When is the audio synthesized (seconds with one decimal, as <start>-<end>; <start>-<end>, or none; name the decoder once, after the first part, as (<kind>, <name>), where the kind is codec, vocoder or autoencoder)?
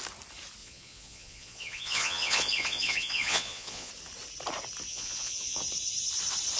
0.6-3.9 (vocoder, Vocos); 4.9-5.6